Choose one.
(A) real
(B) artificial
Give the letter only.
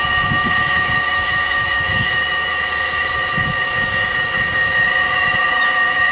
B